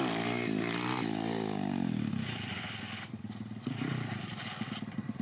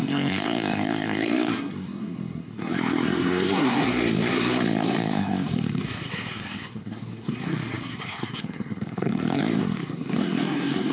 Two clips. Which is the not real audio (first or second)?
second